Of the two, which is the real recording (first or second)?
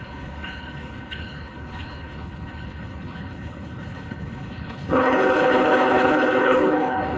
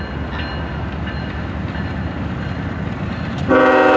second